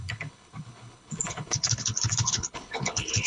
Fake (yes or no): yes